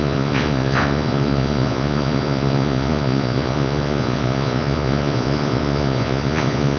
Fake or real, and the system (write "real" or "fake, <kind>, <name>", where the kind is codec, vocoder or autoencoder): fake, vocoder, Vocos